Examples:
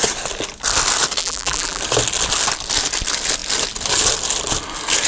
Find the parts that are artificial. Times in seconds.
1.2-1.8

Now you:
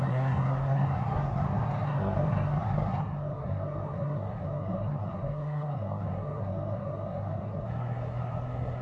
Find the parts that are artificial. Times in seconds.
0.0-8.8

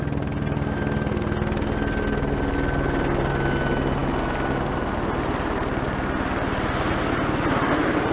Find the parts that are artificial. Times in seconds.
none

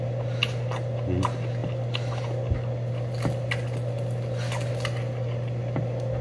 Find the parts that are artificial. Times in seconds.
none

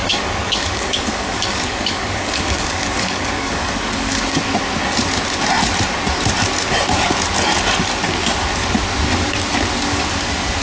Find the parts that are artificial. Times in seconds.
0.0-4.4

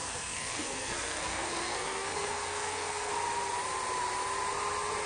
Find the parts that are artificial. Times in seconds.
0.0-3.1

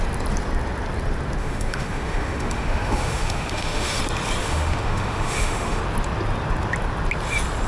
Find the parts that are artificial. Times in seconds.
1.4-4.0; 4.4-5.8